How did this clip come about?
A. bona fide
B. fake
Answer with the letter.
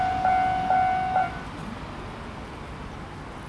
A